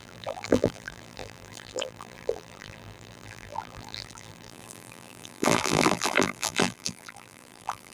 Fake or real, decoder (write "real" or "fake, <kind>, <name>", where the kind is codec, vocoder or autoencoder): fake, vocoder, BigVGAN v2